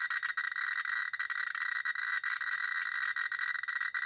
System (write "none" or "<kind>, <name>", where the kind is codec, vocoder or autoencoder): none